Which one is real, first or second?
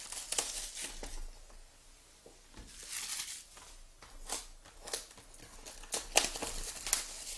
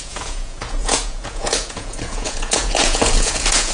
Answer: first